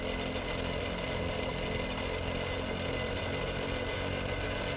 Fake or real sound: real